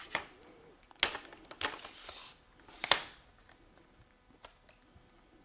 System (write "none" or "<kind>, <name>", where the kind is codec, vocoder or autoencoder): none